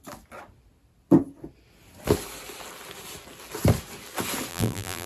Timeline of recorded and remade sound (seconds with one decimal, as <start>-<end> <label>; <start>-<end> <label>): 0.0-4.5 recorded; 4.5-5.1 remade